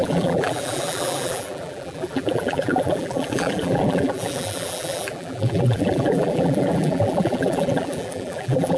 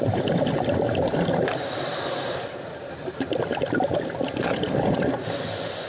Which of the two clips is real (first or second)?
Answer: second